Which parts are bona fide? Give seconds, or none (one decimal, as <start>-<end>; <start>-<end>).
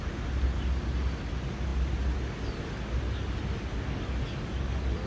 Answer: 0.0-5.1